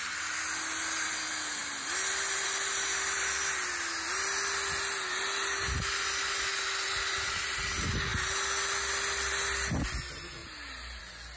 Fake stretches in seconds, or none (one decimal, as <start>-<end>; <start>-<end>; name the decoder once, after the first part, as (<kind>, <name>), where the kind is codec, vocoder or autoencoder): none